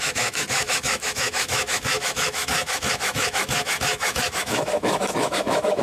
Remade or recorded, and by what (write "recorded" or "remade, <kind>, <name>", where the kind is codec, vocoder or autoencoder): remade, autoencoder, DAC-VAE